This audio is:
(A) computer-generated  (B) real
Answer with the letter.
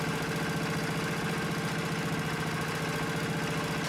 B